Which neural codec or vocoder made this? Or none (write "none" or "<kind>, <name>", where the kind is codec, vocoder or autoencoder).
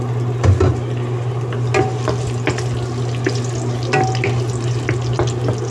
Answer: none